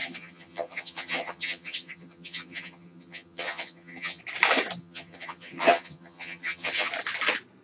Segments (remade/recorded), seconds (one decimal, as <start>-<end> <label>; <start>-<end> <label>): 0.0-4.2 remade; 4.2-4.8 recorded; 4.8-6.9 remade; 6.9-7.6 recorded